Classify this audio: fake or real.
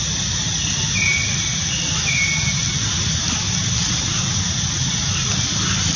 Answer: real